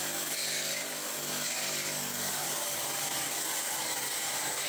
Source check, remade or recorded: remade